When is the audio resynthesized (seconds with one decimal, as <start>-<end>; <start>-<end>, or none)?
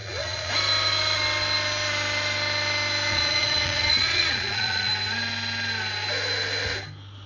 0.0-0.5; 3.1-4.9